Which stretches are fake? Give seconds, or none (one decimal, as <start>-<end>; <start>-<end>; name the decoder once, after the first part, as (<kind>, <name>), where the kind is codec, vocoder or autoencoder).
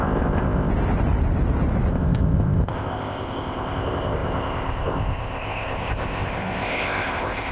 0.0-0.7 (codec, ZipCodec); 1.9-7.5